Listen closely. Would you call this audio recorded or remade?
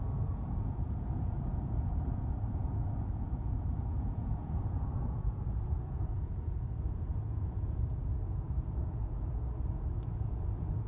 remade